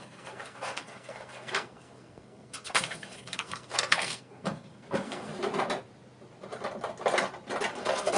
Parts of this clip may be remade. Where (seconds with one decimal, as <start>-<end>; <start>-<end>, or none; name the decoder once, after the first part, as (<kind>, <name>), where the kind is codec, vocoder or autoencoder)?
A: 0.0-5.3 (codec, SNAC); 7.7-8.2